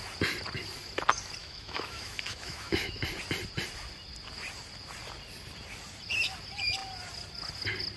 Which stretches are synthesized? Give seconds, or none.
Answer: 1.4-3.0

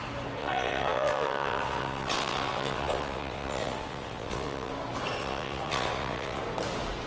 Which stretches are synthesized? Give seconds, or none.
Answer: 0.4-4.7; 5.2-6.4